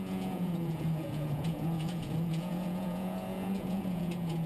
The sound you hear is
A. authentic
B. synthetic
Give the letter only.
B